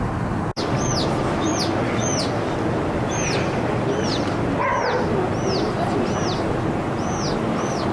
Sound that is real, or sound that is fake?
real